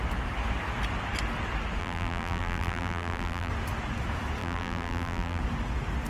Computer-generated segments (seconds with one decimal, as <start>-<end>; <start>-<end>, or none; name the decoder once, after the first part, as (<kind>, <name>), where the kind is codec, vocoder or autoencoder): 1.8-3.5 (vocoder, BigVGAN v2); 4.4-5.4